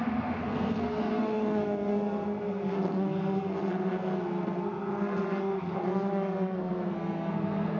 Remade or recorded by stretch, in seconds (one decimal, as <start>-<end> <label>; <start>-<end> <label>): 0.0-7.8 remade